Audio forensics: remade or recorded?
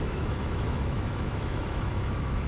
remade